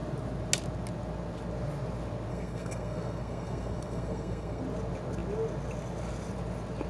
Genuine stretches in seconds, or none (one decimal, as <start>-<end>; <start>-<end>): 0.0-2.3; 4.6-6.9

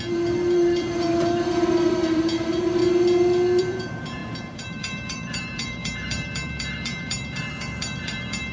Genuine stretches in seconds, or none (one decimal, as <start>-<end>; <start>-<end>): 2.8-3.6

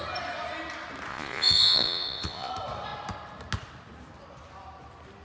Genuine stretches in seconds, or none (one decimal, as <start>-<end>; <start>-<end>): 0.0-1.1; 2.5-5.2

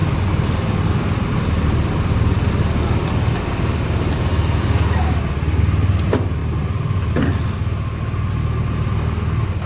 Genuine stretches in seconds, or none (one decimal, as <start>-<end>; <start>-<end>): 2.5-9.7

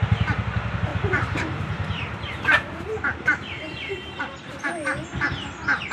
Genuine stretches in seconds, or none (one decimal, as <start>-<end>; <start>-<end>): 0.0-0.9; 4.4-5.9